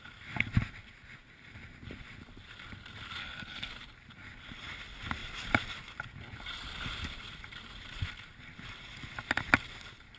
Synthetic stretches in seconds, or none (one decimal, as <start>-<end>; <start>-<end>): 3.2-3.7